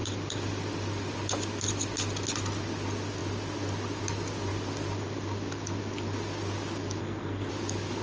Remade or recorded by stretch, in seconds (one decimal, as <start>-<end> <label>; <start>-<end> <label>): 0.0-7.0 recorded; 7.0-7.5 remade; 7.5-8.0 recorded